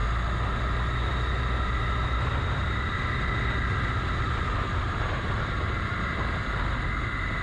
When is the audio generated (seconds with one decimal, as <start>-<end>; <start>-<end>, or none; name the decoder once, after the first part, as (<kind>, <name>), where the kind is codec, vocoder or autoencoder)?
4.6-5.8 (vocoder, BigVGAN v2)